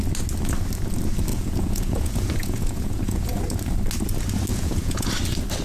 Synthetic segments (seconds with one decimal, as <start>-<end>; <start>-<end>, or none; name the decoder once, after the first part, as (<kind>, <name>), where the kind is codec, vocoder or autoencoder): 1.3-3.4 (vocoder, Vocos); 4.5-5.1